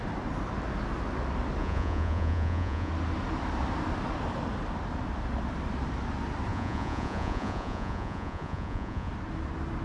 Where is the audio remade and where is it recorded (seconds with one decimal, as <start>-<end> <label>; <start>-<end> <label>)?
0.0-1.6 recorded; 1.6-2.9 remade; 2.9-6.5 recorded; 6.5-9.1 remade; 9.1-9.8 recorded